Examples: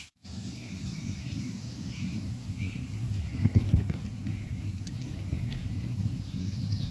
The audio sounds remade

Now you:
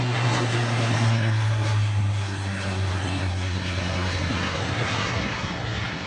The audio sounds remade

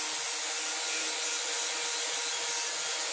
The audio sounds recorded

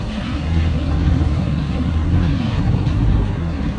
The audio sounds remade